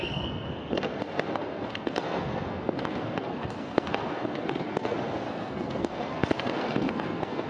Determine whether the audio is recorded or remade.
remade